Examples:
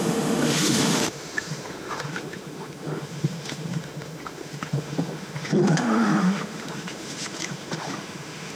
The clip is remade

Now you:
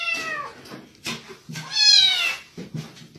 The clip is recorded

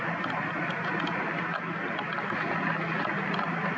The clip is recorded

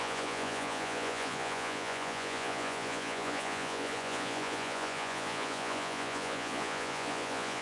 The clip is remade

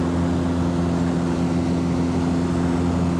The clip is recorded